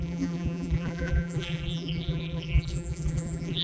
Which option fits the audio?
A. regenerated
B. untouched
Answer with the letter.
A